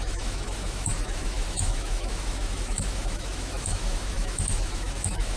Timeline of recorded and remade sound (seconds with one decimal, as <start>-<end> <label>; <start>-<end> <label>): 0.0-5.4 remade